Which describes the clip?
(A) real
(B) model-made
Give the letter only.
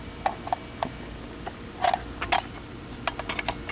A